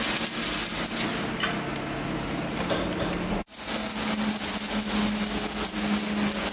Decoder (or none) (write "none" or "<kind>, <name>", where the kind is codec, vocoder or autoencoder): none